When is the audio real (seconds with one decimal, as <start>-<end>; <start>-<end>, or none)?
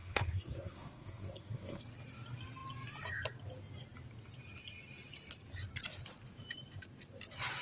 1.8-7.6